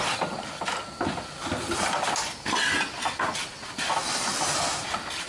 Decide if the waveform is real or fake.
fake